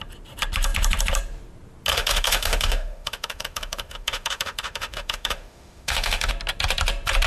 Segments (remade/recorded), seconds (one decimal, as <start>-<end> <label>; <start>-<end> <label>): 0.0-1.9 recorded; 1.9-6.3 remade; 6.3-7.3 recorded